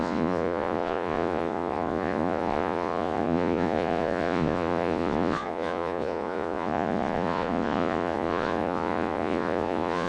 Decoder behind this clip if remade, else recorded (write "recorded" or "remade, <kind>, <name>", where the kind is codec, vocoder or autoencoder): remade, vocoder, Vocos